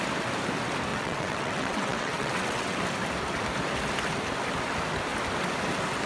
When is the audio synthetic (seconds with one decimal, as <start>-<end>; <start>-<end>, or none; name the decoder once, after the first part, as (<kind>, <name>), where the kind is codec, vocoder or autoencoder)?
0.9-2.8 (vocoder, WaveNeXt)

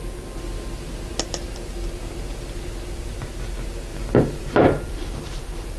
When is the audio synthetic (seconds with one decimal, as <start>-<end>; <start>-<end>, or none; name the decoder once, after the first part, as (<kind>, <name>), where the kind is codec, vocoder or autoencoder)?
3.9-5.8 (vocoder, BigVGAN v2)

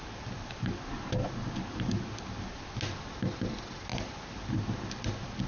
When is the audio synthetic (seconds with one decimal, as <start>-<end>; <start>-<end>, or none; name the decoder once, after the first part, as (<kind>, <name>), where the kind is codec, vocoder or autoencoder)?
none

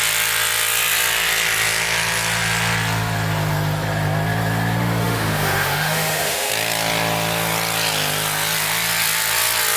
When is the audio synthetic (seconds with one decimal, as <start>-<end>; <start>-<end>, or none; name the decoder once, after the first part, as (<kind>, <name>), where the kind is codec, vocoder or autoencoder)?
5.0-6.5 (autoencoder, DAC-VAE)